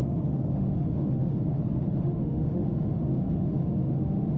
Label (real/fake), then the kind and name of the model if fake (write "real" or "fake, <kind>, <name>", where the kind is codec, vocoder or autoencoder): fake, autoencoder, DAC-VAE